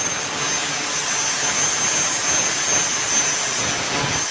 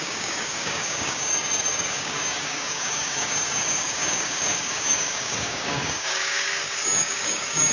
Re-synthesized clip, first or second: second